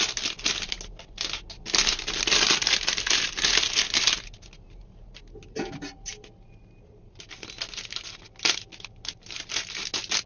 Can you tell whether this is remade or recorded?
recorded